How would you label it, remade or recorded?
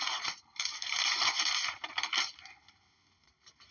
remade